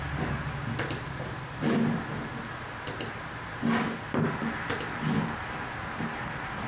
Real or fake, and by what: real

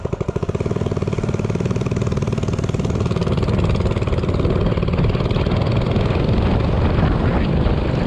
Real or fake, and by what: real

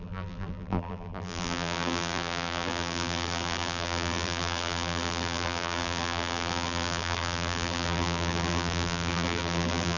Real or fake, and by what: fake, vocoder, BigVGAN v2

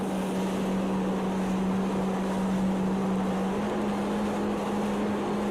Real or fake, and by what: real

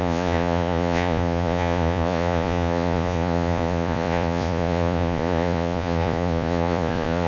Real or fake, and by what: fake, vocoder, Vocos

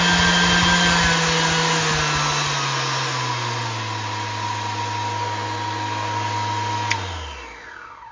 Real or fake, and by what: real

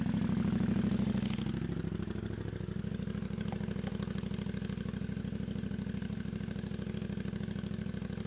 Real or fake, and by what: real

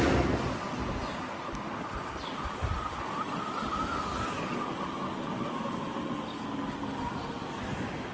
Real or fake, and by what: real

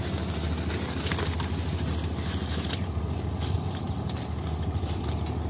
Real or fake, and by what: real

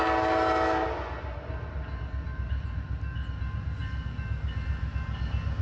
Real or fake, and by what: real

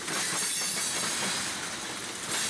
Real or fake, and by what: real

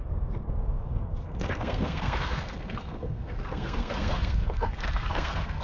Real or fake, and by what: fake, codec, SNAC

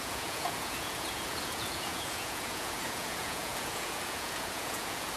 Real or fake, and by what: fake, vocoder, Vocos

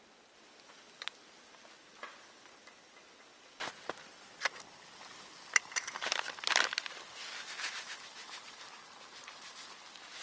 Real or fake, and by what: real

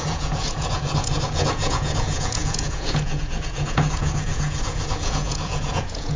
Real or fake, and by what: fake, vocoder, Vocos